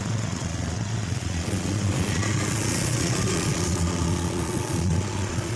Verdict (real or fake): fake